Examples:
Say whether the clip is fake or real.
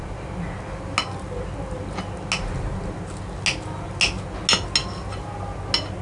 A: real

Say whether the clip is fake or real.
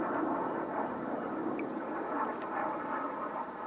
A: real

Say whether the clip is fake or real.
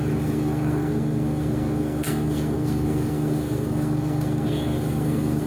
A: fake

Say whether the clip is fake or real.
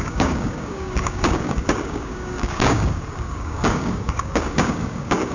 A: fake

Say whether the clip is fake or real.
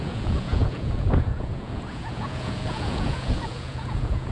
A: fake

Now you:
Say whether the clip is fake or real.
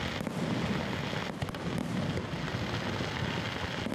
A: real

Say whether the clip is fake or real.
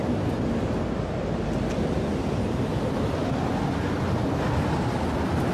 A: real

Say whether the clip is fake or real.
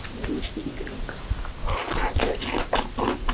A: real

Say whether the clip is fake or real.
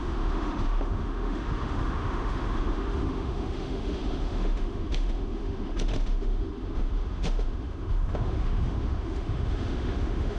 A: fake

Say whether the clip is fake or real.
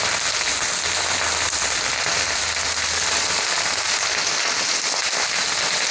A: real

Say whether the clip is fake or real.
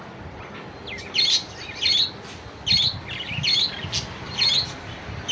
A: real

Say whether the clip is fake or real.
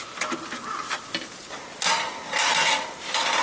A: real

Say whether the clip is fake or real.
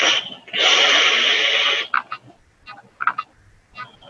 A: real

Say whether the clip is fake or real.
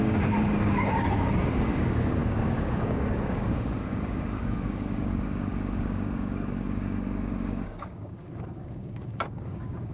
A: fake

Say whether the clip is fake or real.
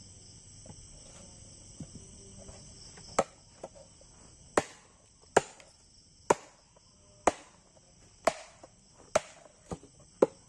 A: real